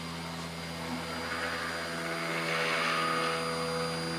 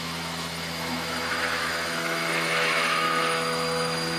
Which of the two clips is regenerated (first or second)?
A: second